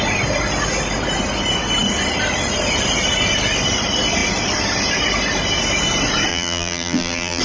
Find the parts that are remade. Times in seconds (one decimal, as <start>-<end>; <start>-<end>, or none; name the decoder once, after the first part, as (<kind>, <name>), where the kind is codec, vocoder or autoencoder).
6.3-7.4 (vocoder, BigVGAN v2)